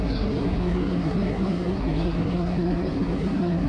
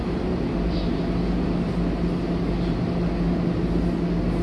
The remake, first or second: first